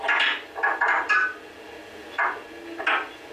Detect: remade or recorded recorded